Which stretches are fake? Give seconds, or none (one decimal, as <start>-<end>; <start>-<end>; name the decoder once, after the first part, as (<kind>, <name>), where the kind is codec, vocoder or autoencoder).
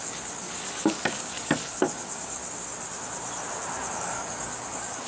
0.0-2.4 (codec, DAC); 3.9-5.1